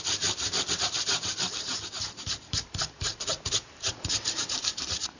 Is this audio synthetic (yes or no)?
yes